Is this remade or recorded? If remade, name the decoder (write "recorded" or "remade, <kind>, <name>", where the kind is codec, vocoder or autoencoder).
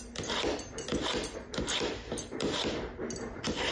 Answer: remade, vocoder, BigVGAN v2